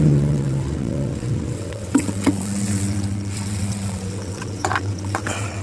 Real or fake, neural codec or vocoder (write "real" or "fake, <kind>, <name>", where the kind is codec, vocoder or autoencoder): fake, vocoder, WaveNeXt